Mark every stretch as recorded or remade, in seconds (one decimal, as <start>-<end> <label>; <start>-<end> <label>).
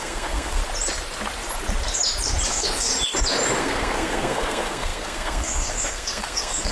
0.0-0.6 remade; 0.6-2.5 recorded; 2.5-2.9 remade; 2.9-3.6 recorded; 3.6-6.7 remade